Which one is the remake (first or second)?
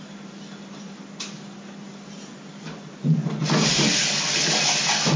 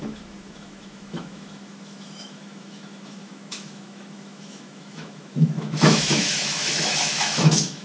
second